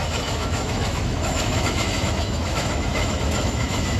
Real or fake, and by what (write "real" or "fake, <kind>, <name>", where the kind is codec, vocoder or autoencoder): fake, autoencoder, DAC-VAE